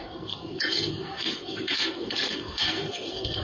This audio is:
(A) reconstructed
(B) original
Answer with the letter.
A